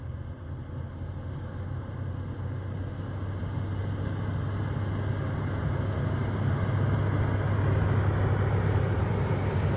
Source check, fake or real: real